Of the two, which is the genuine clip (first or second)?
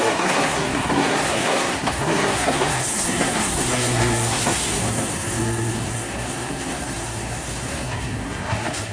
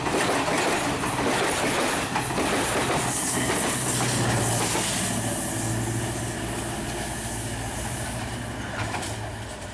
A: second